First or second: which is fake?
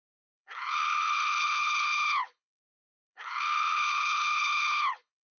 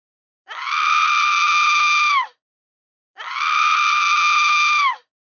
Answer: first